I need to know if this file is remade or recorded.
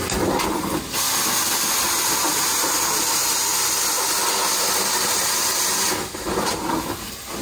recorded